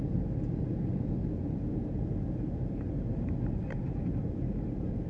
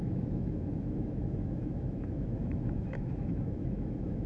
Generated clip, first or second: second